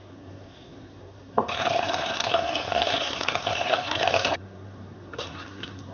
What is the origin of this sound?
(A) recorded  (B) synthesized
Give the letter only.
B